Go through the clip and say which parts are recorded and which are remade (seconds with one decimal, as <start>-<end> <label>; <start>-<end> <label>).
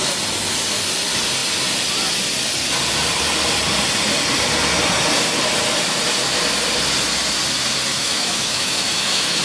0.0-7.9 recorded; 7.9-9.4 remade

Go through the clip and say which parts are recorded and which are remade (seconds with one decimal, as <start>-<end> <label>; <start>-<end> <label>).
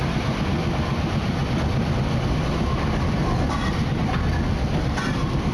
0.0-5.5 recorded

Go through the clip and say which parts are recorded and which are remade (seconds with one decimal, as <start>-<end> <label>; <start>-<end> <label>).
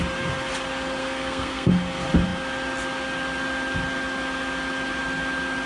0.0-1.0 recorded; 1.0-1.7 remade; 1.7-5.7 recorded